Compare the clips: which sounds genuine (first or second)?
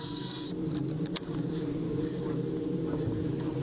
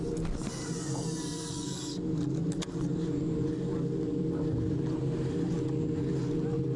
second